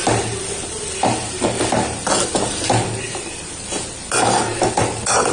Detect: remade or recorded recorded